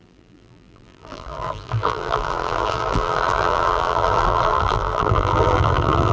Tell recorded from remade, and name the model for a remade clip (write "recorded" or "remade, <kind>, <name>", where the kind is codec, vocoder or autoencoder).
remade, vocoder, BigVGAN v2